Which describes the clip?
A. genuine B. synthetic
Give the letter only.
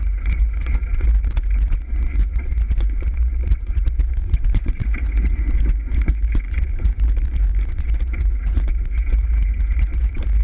B